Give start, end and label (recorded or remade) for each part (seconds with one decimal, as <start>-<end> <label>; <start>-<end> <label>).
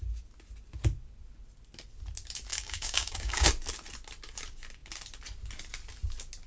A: 0.0-2.5 recorded; 2.5-3.5 remade; 3.5-6.5 recorded